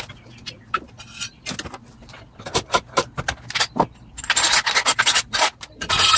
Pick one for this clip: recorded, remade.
recorded